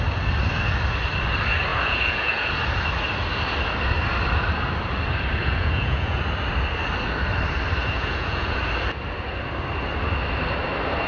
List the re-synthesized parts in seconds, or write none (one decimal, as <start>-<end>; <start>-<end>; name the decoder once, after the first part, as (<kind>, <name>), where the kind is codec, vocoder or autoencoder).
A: 1.7-2.5 (vocoder, Vocos); 5.4-6.2; 7.8-8.6